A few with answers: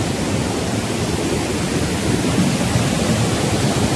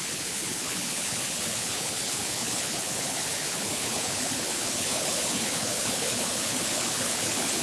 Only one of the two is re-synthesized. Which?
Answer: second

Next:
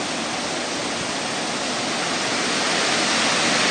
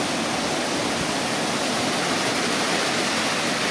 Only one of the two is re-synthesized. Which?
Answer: second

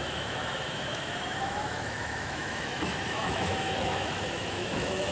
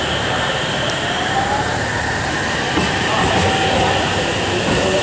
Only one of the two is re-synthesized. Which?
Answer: first